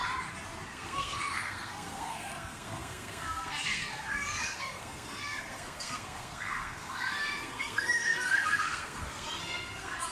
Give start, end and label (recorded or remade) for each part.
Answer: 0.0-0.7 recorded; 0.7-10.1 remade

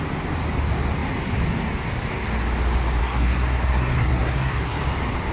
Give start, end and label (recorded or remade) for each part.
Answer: 0.0-3.0 recorded; 3.0-4.8 remade; 4.8-5.3 recorded

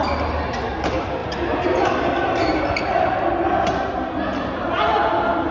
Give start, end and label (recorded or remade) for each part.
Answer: 0.0-5.5 recorded

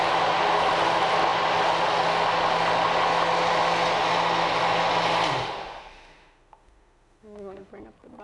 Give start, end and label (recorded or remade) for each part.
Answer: 0.0-5.4 recorded; 5.4-7.7 remade; 7.7-8.2 recorded

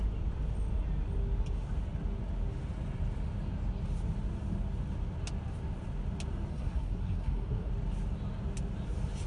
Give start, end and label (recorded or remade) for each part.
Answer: 0.0-6.5 recorded; 6.5-7.7 remade; 7.7-9.3 recorded

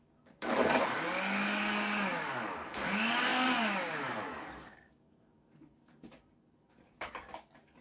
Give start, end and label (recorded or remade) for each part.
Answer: 0.0-7.8 remade

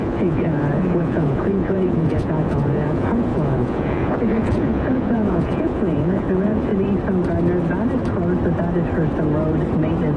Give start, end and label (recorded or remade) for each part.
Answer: 0.0-6.7 remade; 6.7-10.2 recorded